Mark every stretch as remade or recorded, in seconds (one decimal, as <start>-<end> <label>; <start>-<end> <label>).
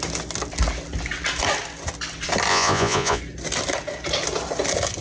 0.0-2.5 recorded; 2.5-3.2 remade; 3.2-5.0 recorded